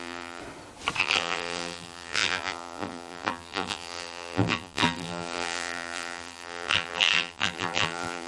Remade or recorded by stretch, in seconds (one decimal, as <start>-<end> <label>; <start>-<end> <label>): 0.0-0.4 remade; 0.4-1.0 recorded; 1.0-8.3 remade